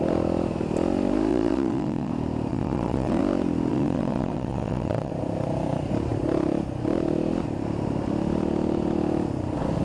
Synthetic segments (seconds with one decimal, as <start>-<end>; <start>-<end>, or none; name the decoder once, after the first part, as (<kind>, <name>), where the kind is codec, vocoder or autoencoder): 1.3-2.1 (vocoder, Vocos); 2.5-3.2; 3.7-5.1